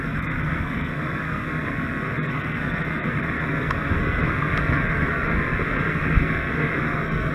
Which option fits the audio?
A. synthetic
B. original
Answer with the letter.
A